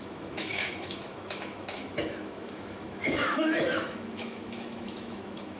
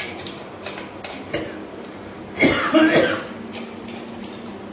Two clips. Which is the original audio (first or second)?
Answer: second